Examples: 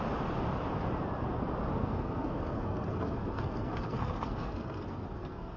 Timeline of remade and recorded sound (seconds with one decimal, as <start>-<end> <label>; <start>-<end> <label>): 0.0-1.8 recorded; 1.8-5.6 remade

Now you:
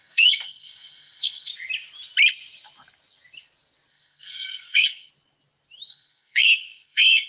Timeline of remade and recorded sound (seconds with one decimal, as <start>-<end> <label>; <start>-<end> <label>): 0.0-1.5 remade; 1.5-3.9 recorded; 3.9-5.1 remade; 5.1-5.9 recorded; 5.9-7.3 remade

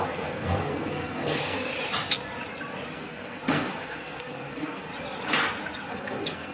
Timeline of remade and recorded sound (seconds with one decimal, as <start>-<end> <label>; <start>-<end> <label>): 0.0-1.7 remade; 1.7-2.9 recorded; 2.9-4.9 remade; 4.9-5.9 recorded; 5.9-6.5 remade